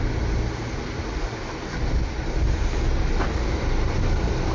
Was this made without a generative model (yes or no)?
yes